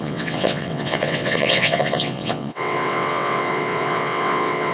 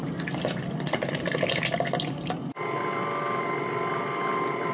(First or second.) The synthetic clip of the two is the first